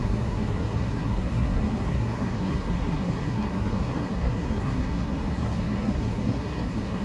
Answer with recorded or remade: remade